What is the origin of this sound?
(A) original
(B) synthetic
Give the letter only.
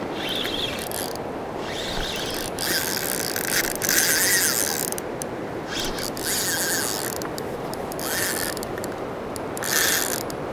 A